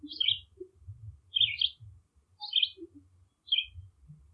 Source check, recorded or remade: recorded